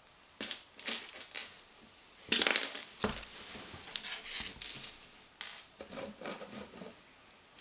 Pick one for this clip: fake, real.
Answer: real